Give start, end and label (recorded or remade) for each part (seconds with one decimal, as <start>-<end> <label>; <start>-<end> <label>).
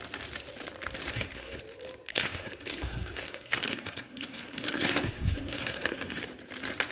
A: 0.0-1.1 recorded; 1.1-1.6 remade; 1.6-2.1 recorded; 2.1-6.2 remade; 6.2-6.9 recorded